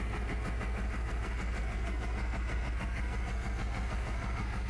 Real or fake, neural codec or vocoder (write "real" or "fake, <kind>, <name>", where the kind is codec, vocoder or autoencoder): fake, codec, SNAC